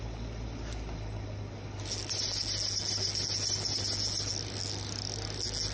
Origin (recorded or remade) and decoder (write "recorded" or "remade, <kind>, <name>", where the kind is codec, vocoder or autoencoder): recorded